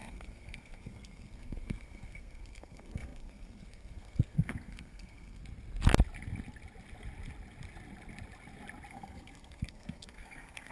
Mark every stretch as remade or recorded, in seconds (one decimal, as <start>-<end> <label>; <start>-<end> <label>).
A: 0.0-5.4 remade; 5.4-8.9 recorded; 8.9-10.7 remade